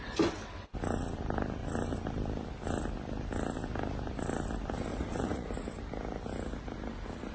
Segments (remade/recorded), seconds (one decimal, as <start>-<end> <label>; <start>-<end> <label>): 0.0-4.9 recorded; 4.9-5.5 remade; 5.5-7.3 recorded